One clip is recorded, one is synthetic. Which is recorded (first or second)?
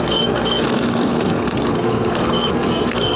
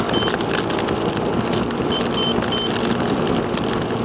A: second